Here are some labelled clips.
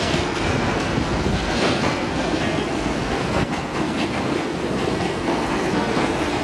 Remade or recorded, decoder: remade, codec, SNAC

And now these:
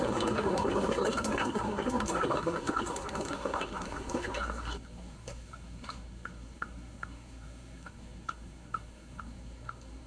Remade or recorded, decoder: remade, codec, SNAC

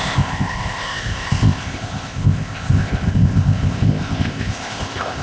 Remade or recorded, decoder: remade, codec, ZipCodec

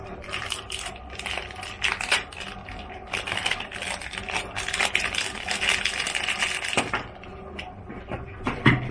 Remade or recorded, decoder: recorded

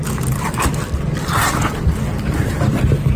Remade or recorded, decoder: remade, vocoder, BigVGAN v2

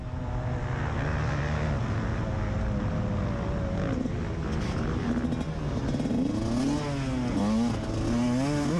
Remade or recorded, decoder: recorded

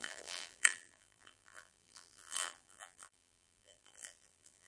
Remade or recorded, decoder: remade, vocoder, BigVGAN v2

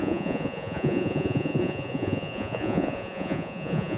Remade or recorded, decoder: remade, vocoder, Vocos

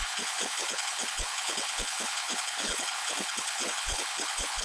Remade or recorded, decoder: remade, codec, HILCodec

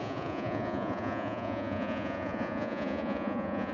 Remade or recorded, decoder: remade, vocoder, Vocos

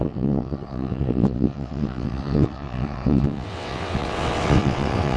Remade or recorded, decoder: remade, vocoder, WaveNeXt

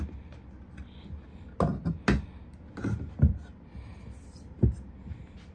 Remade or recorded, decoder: recorded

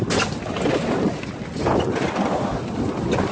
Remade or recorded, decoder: recorded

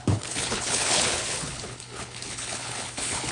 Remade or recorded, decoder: remade, codec, HILCodec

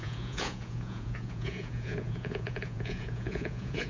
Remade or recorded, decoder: remade, vocoder, Vocos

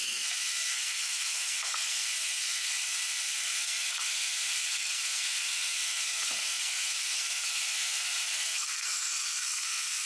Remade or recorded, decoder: remade, codec, SNAC